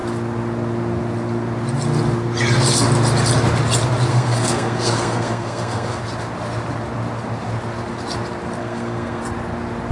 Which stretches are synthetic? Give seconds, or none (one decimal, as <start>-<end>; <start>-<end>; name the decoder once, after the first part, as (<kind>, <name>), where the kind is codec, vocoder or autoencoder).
4.1-6.0 (codec, SNAC); 8.6-9.2